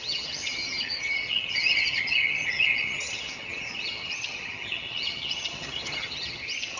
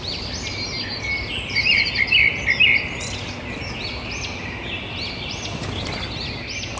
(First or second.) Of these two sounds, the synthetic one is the first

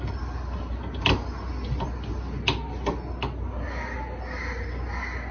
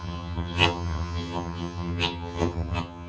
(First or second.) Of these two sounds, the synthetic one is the second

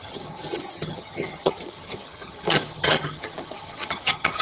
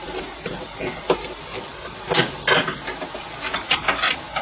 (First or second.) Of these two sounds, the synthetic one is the first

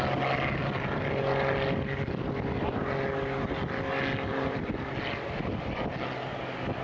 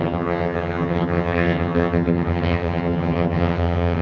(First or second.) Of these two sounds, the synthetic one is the second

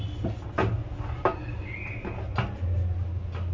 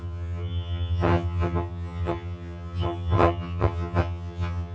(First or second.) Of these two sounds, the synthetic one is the second